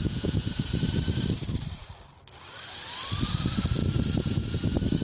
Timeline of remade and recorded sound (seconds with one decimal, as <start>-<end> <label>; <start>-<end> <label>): 0.0-0.7 remade; 0.7-5.0 recorded